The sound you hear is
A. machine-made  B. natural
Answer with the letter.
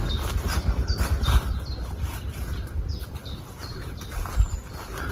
B